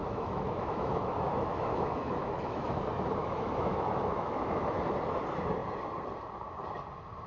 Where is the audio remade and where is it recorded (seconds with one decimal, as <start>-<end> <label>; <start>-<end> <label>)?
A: 0.0-2.8 remade; 2.8-3.2 recorded; 3.2-4.7 remade; 4.7-7.3 recorded